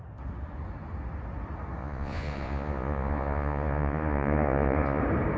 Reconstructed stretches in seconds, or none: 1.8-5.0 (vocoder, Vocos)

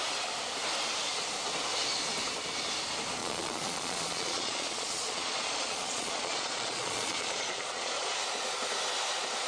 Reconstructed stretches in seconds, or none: 3.2-8.2 (vocoder, Vocos)

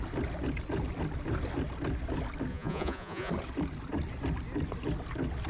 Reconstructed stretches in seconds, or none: 2.5-3.3 (vocoder, Vocos)

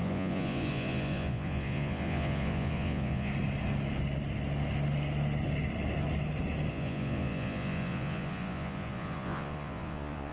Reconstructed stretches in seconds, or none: 0.0-3.3 (vocoder, Vocos); 6.7-10.3